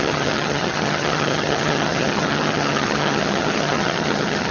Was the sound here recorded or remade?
remade